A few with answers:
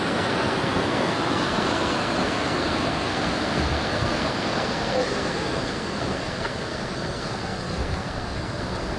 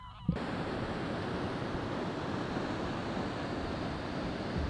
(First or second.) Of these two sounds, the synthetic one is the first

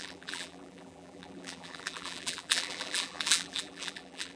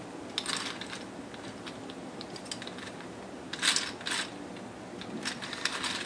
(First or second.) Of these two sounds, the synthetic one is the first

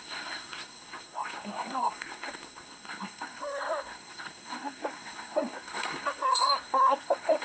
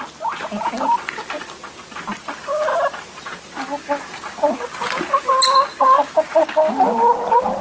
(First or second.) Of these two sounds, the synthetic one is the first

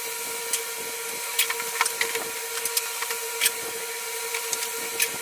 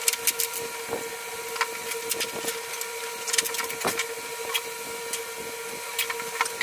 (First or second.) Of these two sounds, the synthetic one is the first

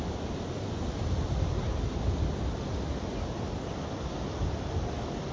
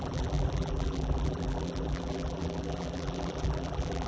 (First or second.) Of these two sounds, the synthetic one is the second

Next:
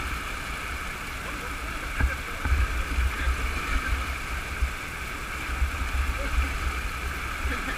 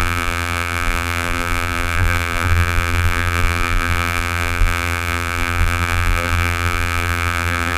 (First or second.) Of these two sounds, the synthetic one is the second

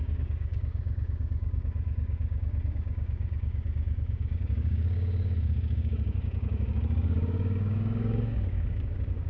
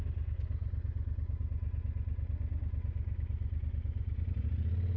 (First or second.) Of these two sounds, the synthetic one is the first